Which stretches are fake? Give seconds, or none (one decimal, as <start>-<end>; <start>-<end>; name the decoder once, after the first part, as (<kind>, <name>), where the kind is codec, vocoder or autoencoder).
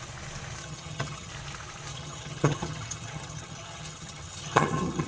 0.6-1.3 (vocoder, HiFi-GAN); 1.9-5.1